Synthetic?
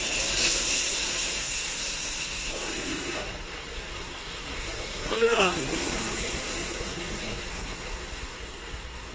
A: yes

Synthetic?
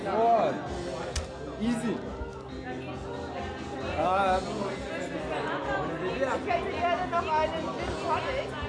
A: no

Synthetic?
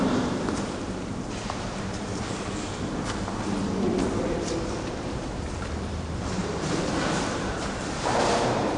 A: yes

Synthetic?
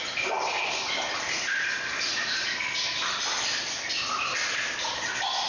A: no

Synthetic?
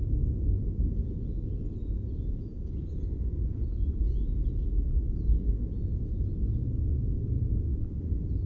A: no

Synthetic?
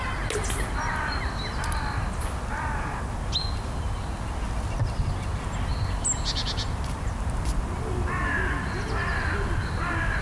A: no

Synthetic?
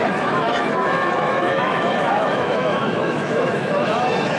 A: yes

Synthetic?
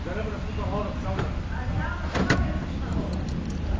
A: no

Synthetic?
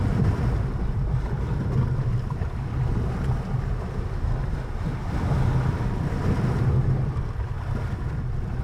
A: no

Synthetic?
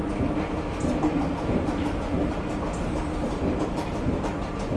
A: no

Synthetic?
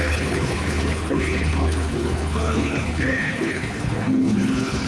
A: yes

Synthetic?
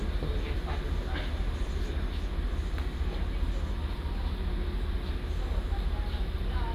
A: no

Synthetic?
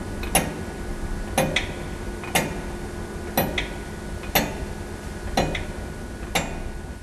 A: no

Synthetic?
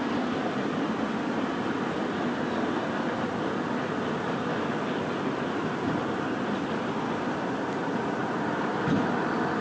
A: no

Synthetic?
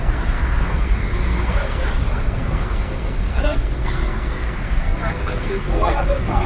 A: yes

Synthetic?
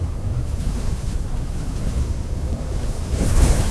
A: yes